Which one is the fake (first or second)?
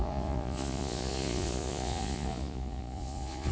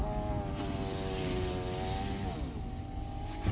first